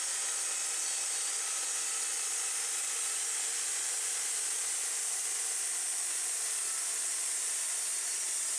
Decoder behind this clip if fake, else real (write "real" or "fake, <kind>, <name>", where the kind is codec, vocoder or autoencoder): real